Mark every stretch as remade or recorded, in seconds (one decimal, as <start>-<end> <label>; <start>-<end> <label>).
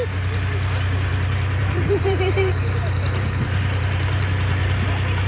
0.0-1.1 recorded; 1.1-4.3 remade; 4.3-5.3 recorded